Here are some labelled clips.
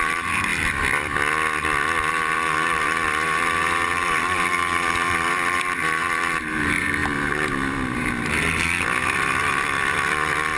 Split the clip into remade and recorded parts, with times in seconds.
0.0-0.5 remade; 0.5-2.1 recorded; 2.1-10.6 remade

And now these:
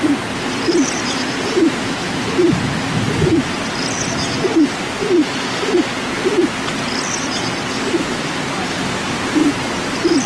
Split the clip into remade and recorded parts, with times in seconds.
0.0-10.3 recorded

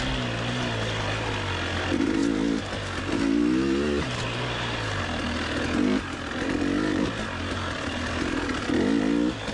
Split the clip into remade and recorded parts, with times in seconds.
0.0-9.5 recorded

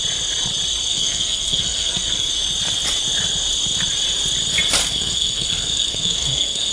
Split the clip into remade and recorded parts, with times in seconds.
0.0-0.9 recorded; 0.9-2.3 remade; 2.3-4.8 recorded; 4.8-6.7 remade